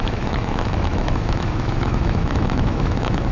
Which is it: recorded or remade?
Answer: remade